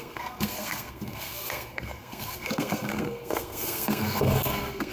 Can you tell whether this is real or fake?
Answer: fake